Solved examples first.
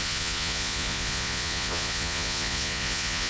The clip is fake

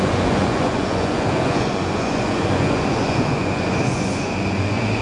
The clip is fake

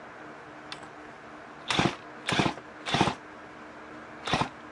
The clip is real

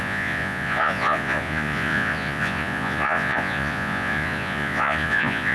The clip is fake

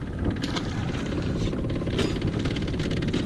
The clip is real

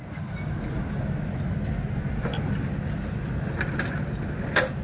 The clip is real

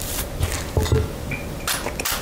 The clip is real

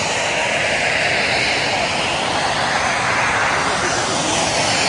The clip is real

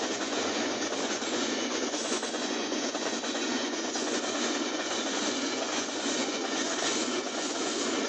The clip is fake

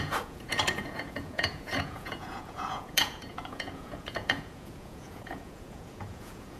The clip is fake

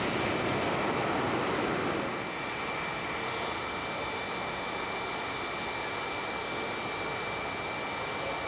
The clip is real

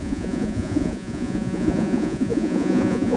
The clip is fake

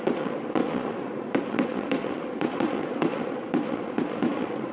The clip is fake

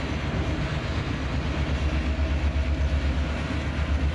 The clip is real